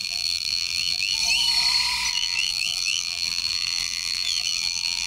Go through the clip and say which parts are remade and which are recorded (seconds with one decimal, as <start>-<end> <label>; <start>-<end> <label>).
0.0-1.2 remade; 1.2-2.1 recorded; 2.1-5.1 remade